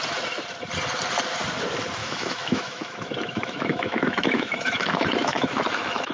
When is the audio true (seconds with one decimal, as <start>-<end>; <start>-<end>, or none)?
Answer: 0.0-2.0